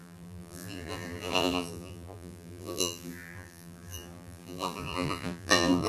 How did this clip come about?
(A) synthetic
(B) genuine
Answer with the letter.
A